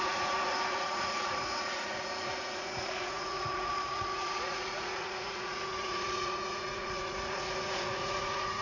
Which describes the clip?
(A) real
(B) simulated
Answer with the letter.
B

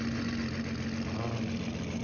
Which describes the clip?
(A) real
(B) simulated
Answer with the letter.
A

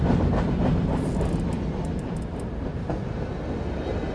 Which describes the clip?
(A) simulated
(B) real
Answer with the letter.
B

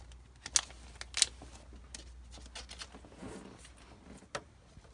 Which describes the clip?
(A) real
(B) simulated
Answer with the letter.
A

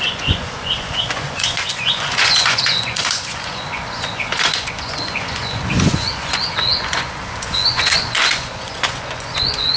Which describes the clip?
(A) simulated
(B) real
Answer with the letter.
A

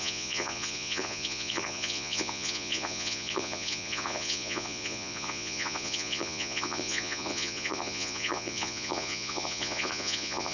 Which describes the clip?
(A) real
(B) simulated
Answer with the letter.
B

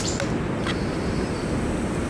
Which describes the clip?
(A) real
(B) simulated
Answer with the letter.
A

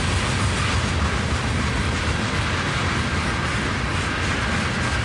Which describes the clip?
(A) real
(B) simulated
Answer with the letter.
A